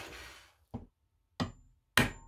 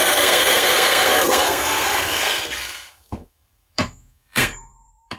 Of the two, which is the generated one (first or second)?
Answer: second